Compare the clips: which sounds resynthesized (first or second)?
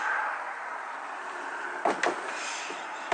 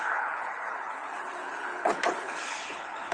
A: second